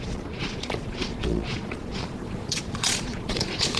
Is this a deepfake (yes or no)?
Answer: yes